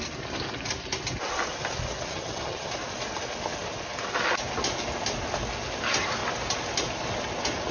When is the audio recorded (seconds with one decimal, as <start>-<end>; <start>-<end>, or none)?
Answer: 0.0-2.1; 2.7-7.7